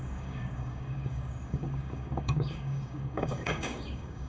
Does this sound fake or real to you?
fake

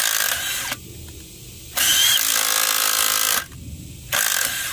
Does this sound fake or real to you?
real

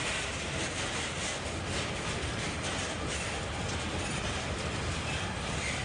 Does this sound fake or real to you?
real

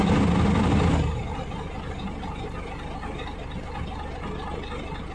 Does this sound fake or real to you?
real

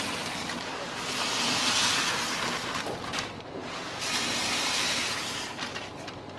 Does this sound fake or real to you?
real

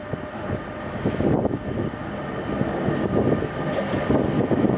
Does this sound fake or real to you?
real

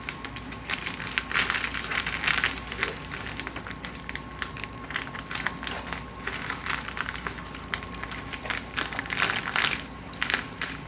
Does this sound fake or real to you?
real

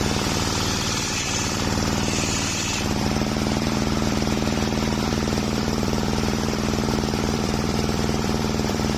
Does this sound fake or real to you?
fake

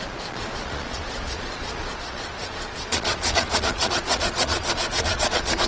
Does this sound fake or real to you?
fake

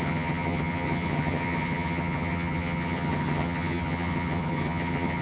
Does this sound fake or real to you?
fake